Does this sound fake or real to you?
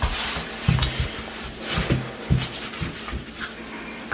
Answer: real